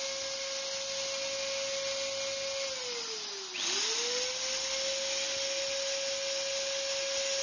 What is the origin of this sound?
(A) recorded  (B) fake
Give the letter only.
A